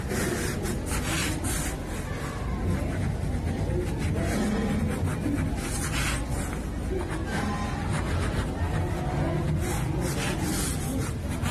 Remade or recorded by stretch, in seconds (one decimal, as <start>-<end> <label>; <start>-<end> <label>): 0.0-11.5 recorded